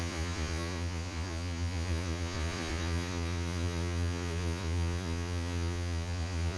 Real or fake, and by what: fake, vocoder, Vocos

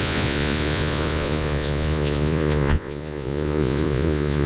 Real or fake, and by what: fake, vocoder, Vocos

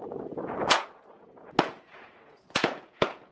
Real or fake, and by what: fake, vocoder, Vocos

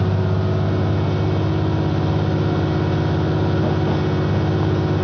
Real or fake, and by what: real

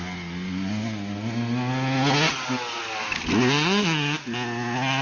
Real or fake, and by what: real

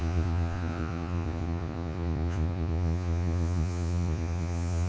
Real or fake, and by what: fake, vocoder, Vocos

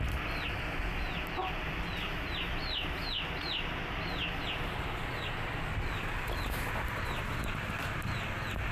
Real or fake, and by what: real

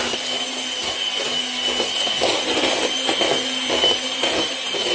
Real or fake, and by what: real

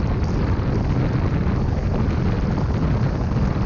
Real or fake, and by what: real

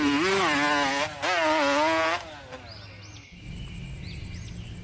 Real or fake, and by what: real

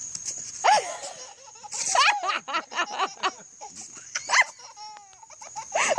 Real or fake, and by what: real